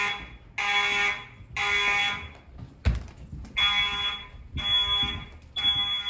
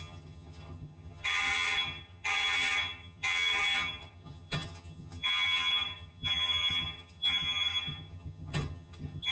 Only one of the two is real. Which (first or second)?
first